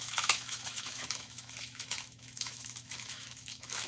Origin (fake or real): fake